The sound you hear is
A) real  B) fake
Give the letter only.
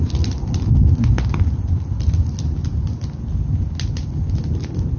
A